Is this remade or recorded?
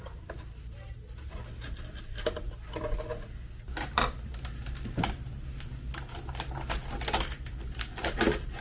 recorded